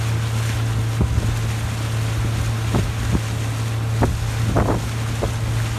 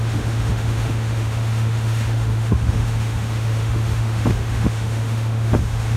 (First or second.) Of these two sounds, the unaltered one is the first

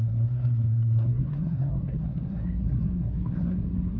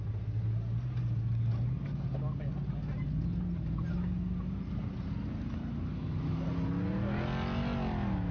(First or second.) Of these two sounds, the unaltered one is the second